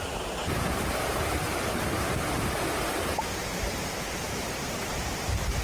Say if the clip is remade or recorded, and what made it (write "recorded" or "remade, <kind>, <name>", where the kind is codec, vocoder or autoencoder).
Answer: remade, vocoder, BigVGAN v2